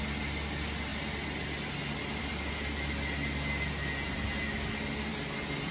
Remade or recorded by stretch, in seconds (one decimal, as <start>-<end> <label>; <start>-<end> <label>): 0.0-5.7 recorded